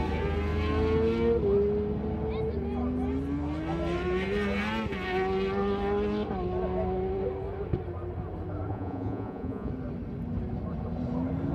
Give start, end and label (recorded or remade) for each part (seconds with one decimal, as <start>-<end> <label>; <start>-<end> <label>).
0.0-8.7 recorded; 8.7-9.7 remade; 9.7-11.5 recorded